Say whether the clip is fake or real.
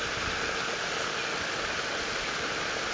real